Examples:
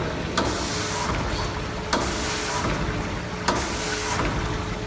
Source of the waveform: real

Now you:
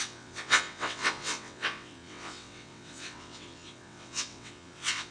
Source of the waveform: fake